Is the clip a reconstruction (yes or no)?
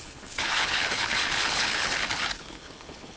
yes